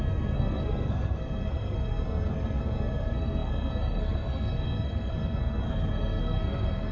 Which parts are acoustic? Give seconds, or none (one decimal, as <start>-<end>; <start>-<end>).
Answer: none